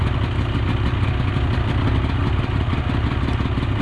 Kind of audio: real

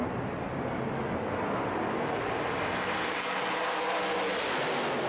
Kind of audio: real